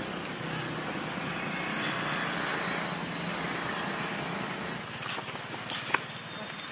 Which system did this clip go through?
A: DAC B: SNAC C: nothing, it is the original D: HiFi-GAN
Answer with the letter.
C